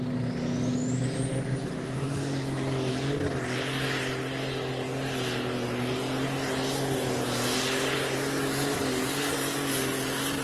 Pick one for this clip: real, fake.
real